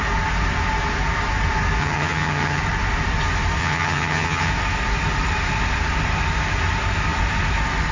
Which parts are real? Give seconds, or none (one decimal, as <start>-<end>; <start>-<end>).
0.0-1.8; 2.6-3.6; 4.5-7.9